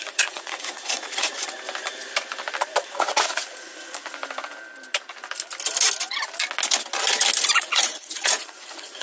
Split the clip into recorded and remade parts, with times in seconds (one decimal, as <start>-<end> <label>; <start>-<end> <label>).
0.0-1.3 remade; 1.3-2.8 recorded; 2.8-4.2 remade; 4.2-7.4 recorded; 7.4-9.0 remade